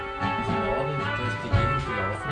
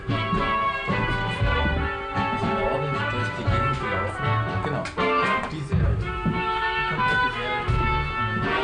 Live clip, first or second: first